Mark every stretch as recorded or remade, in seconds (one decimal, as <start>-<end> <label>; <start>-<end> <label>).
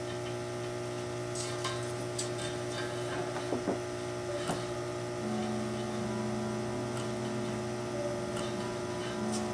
0.0-9.5 recorded